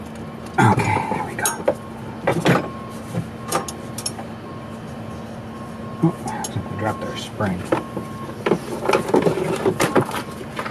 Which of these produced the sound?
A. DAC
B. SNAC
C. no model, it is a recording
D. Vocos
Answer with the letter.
C